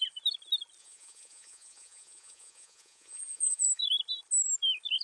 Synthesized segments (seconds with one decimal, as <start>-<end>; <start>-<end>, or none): 0.8-3.8